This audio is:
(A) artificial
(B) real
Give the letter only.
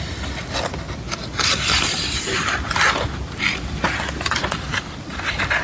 B